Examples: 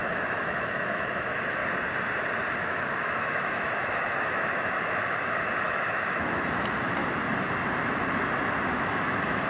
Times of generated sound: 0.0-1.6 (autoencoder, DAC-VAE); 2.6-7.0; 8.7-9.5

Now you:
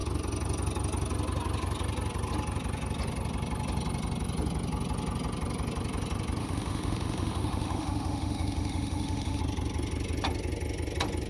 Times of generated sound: 6.4-9.4 (autoencoder, DAC-VAE)

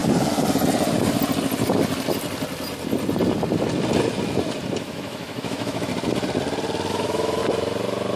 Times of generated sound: 4.8-5.9 (autoencoder, DAC-VAE); 6.9-7.4

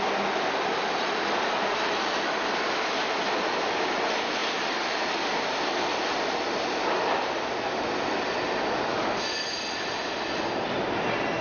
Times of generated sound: none

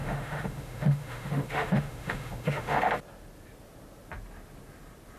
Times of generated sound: 0.0-2.9 (autoencoder, DAC-VAE)

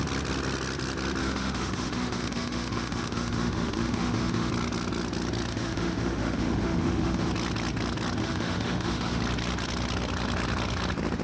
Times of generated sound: 1.2-4.5 (autoencoder, DAC-VAE); 5.5-7.3; 8.2-9.2